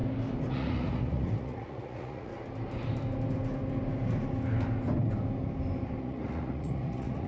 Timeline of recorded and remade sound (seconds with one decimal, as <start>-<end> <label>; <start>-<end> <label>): 0.0-0.5 recorded; 0.5-2.3 remade; 2.3-6.0 recorded; 6.0-7.3 remade